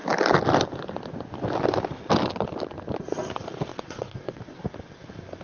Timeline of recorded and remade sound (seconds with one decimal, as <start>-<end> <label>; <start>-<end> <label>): 0.0-3.7 recorded; 3.7-4.4 remade; 4.4-5.4 recorded